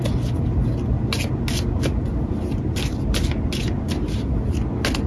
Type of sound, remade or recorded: recorded